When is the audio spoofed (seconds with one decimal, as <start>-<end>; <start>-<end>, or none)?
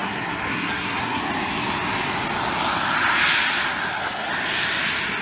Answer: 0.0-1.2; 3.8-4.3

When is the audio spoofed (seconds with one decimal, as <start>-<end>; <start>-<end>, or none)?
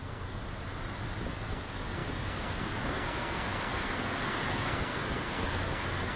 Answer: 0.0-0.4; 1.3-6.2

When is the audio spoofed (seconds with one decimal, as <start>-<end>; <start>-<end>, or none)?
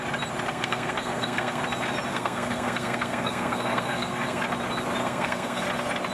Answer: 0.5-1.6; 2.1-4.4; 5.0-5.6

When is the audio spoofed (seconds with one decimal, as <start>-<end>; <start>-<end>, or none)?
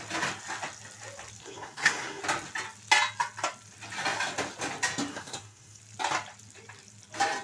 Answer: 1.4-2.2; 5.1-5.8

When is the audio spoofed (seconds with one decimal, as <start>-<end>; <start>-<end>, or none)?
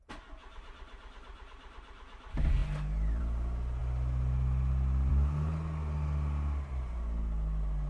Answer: none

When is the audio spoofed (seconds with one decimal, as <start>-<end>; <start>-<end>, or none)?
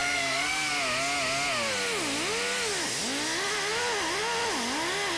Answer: 0.0-0.7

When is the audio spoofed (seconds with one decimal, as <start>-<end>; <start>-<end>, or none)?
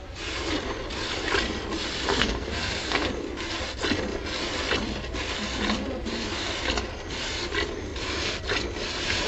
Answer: 2.1-3.1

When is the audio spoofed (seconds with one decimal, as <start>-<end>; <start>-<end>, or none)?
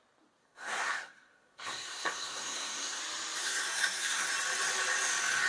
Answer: 0.4-3.0; 3.4-4.3